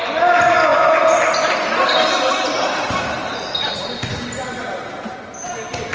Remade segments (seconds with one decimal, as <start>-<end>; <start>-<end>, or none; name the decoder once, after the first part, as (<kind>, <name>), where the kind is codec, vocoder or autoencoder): none